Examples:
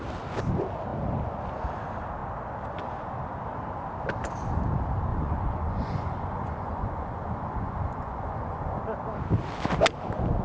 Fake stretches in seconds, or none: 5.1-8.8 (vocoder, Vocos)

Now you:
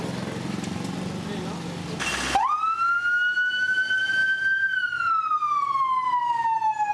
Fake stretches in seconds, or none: 4.2-5.6 (vocoder, BigVGAN v2)

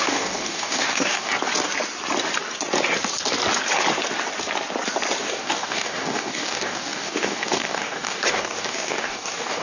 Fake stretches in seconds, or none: 0.0-1.3 (codec, DAC); 5.2-9.6

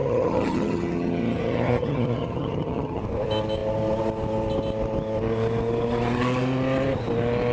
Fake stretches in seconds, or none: 0.0-3.0 (vocoder, HiFi-GAN)

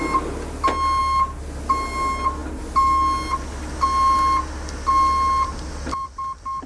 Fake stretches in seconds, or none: none

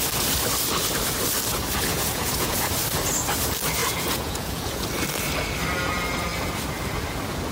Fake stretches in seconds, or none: 1.9-2.7 (vocoder, Vocos); 3.8-4.9

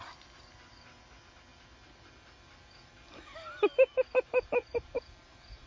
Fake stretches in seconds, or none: none